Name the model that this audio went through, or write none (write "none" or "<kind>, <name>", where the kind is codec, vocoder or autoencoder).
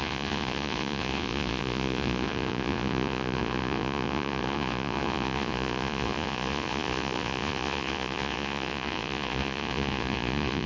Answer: vocoder, Vocos